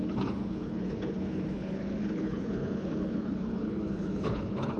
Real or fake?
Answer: fake